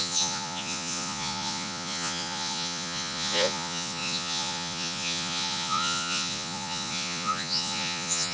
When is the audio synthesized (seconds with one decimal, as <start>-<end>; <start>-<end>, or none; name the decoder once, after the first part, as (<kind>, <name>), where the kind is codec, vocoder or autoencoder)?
0.0-8.3 (vocoder, Vocos)